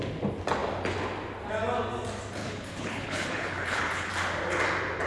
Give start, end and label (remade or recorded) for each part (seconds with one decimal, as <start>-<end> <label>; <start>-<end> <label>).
0.0-2.4 recorded; 2.4-4.1 remade; 4.1-5.1 recorded